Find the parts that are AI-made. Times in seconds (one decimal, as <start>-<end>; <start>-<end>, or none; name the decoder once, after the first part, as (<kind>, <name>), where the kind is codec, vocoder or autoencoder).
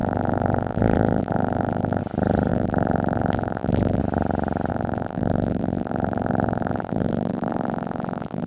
0.0-2.0 (vocoder, BigVGAN v2); 2.5-4.0; 4.7-8.5